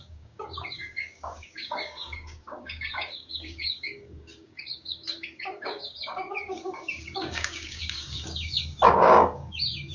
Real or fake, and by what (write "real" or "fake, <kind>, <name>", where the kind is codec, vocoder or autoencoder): fake, codec, DAC